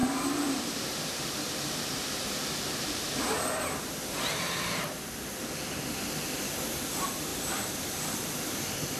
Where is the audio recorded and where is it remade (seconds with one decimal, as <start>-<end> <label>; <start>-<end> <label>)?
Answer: 0.0-3.6 remade; 3.6-7.3 recorded; 7.3-8.6 remade; 8.6-9.0 recorded